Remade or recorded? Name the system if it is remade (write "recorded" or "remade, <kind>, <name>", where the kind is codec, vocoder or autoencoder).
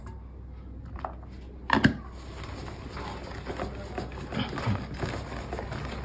recorded